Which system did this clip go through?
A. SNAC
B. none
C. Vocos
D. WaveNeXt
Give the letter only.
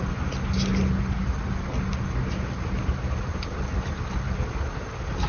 B